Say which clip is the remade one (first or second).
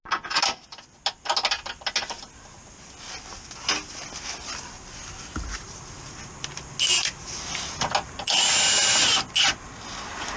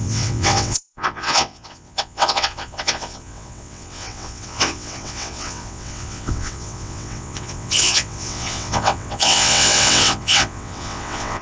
second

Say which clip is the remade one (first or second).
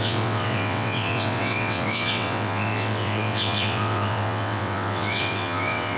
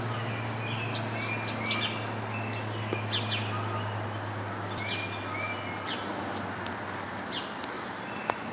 first